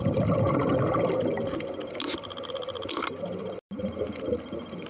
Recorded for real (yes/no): yes